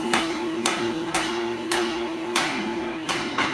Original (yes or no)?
no